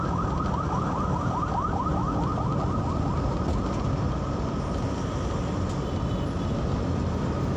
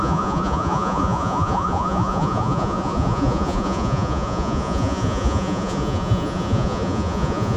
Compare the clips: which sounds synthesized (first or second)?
second